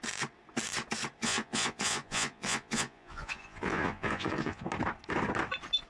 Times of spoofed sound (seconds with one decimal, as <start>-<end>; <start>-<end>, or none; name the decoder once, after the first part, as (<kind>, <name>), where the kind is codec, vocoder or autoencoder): 1.2-4.7 (vocoder, Vocos)